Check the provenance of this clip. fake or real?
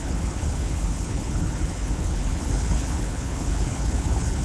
fake